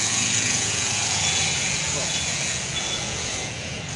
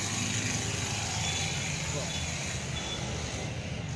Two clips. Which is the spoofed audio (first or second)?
first